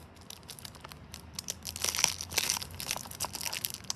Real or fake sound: real